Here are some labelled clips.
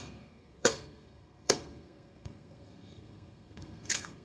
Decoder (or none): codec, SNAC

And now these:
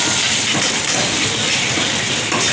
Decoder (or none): vocoder, BigVGAN v2